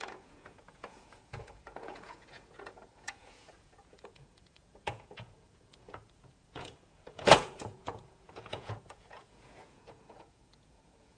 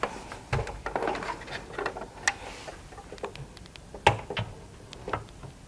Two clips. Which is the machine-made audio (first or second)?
first